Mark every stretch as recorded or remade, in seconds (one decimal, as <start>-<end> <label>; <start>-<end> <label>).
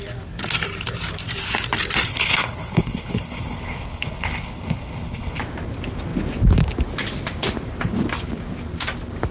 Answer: 0.0-2.1 recorded; 2.1-5.4 remade; 5.4-9.3 recorded